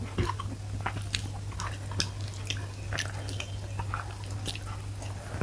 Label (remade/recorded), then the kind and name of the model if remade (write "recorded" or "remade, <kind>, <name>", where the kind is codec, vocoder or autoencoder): recorded